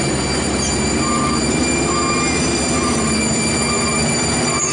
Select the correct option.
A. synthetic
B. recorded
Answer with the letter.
B